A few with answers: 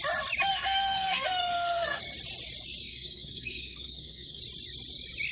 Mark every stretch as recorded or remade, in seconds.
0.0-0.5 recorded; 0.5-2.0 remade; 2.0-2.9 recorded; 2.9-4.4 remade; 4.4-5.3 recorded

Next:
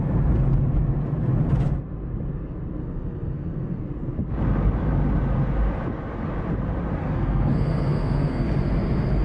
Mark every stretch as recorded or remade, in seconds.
0.0-2.8 recorded; 2.8-3.8 remade; 3.8-7.0 recorded; 7.0-8.4 remade; 8.4-9.2 recorded

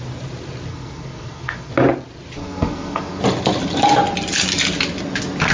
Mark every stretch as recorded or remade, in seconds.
0.0-0.7 recorded; 0.7-1.7 remade; 1.7-2.4 recorded; 2.4-3.2 remade; 3.2-5.5 recorded

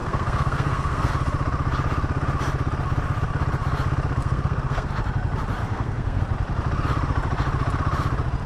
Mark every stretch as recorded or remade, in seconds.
0.0-1.1 remade; 1.1-4.2 recorded; 4.2-4.9 remade; 4.9-5.6 recorded; 5.6-6.2 remade; 6.2-8.5 recorded

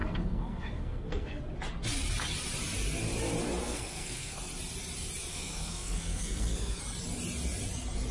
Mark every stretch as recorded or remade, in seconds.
0.0-1.4 remade; 1.4-3.6 recorded; 3.6-4.4 remade; 4.4-5.3 recorded; 5.3-6.8 remade; 6.8-8.1 recorded

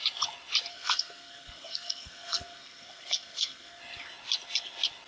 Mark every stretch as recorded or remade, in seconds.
0.0-0.7 recorded; 0.7-3.8 remade; 3.8-5.1 recorded

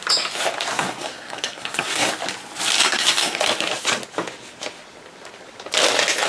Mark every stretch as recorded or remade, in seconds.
0.0-0.7 recorded; 0.7-2.1 remade; 2.1-2.8 recorded; 2.8-3.4 remade; 3.4-6.3 recorded